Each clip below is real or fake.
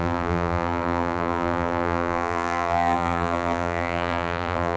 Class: fake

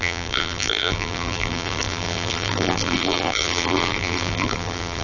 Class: fake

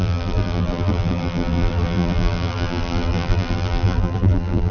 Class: fake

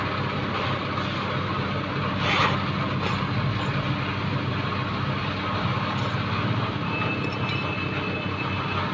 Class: real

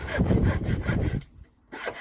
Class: fake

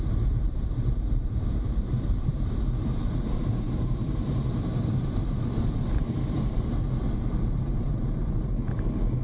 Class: fake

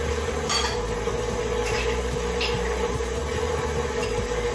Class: fake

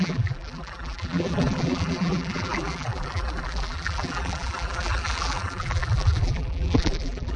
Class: fake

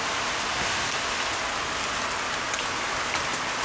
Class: real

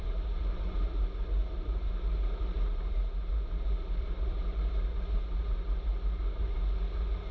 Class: fake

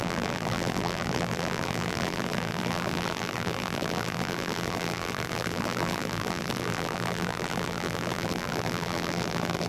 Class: fake